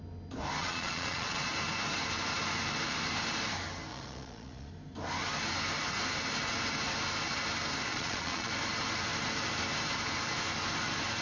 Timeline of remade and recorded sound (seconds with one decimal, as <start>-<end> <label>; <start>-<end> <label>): 0.0-0.6 recorded; 0.6-1.5 remade; 1.5-3.9 recorded; 3.9-4.7 remade; 4.7-7.9 recorded; 7.9-8.5 remade; 8.5-11.2 recorded

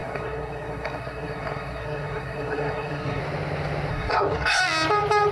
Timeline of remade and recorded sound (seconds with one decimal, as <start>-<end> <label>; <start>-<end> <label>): 0.0-3.2 remade; 3.2-3.9 recorded; 3.9-4.6 remade; 4.6-5.3 recorded

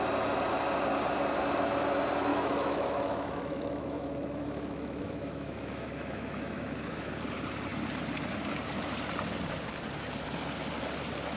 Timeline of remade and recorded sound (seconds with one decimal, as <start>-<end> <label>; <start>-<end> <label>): 0.0-2.3 recorded; 2.3-7.1 remade; 7.1-11.4 recorded

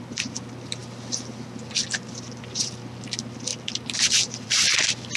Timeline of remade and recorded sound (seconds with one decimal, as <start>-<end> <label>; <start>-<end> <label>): 0.0-0.8 remade; 0.8-2.5 recorded; 2.5-3.5 remade; 3.5-4.3 recorded; 4.3-5.2 remade

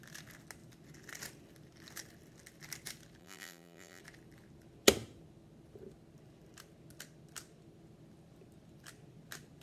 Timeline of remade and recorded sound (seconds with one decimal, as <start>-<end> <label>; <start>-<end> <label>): 0.0-3.2 recorded; 3.2-4.0 remade; 4.0-9.6 recorded

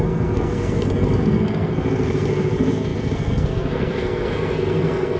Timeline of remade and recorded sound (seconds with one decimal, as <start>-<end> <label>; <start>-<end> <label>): 0.0-5.2 remade

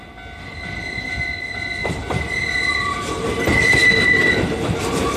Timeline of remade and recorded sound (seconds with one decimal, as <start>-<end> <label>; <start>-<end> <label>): 0.0-1.8 recorded; 1.8-3.4 remade; 3.4-5.2 recorded